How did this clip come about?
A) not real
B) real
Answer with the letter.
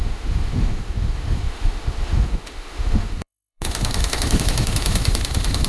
A